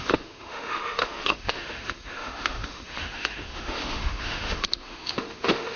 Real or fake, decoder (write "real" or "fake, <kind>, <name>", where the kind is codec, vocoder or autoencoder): fake, autoencoder, DAC-VAE